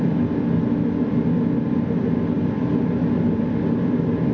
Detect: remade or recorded recorded